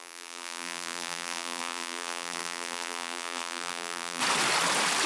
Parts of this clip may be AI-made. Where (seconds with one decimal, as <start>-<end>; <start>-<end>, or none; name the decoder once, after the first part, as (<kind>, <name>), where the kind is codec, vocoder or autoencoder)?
0.0-4.2 (vocoder, BigVGAN v2)